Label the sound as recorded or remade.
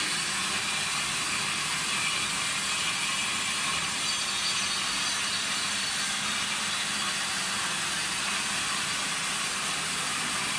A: recorded